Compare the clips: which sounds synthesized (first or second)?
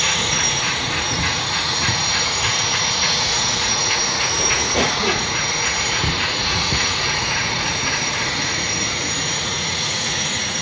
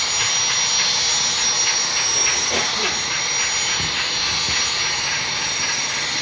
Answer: first